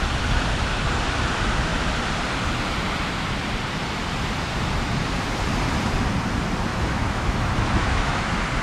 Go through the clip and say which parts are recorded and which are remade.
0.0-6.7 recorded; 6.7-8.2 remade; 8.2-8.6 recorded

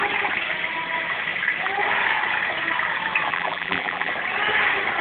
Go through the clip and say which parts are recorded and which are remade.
0.0-3.3 recorded; 3.3-4.1 remade; 4.1-5.0 recorded

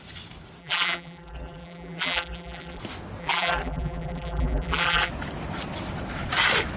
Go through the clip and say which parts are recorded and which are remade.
0.0-0.6 recorded; 0.6-2.8 remade; 2.8-3.2 recorded; 3.2-5.1 remade; 5.1-6.8 recorded